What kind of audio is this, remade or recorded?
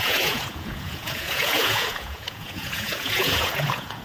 remade